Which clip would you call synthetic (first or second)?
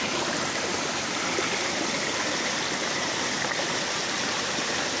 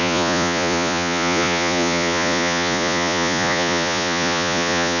second